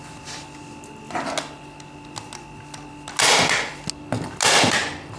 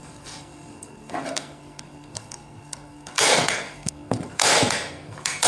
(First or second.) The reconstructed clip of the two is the second